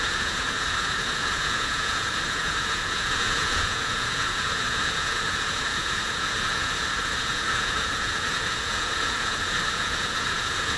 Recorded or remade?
remade